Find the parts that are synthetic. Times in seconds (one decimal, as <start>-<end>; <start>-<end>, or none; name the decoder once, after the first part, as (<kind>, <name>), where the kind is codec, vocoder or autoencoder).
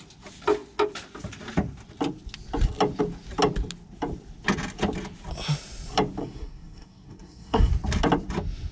6.2-7.7 (codec, SNAC)